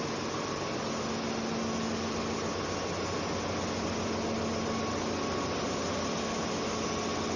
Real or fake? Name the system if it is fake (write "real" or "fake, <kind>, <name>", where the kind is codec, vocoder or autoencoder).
real